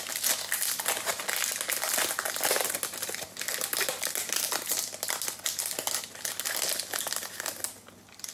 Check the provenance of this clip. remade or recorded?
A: recorded